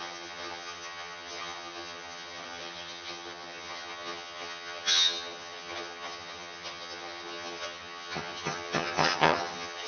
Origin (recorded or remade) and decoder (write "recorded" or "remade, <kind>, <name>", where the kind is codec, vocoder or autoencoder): remade, vocoder, HiFi-GAN